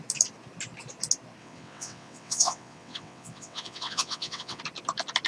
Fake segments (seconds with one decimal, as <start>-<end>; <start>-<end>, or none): 1.4-4.6